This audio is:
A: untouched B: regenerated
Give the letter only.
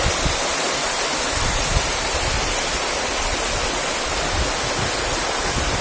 A